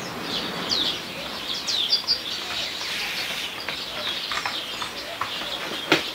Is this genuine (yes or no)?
yes